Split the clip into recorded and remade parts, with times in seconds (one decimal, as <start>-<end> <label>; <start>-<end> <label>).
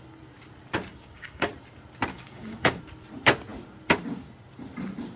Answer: 0.0-0.9 recorded; 0.9-1.5 remade; 1.5-2.1 recorded; 2.1-2.8 remade; 2.8-5.2 recorded